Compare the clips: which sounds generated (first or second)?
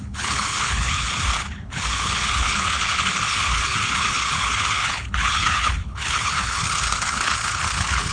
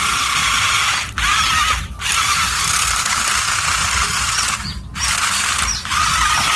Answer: first